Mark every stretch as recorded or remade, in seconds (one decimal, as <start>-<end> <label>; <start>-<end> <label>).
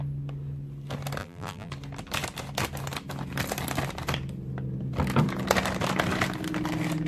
0.0-1.2 recorded; 1.2-1.7 remade; 1.7-7.1 recorded